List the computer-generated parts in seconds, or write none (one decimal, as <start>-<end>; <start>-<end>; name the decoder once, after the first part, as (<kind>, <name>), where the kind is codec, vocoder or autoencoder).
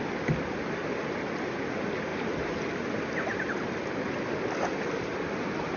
none